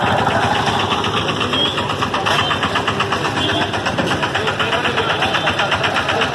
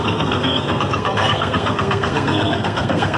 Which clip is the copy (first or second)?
second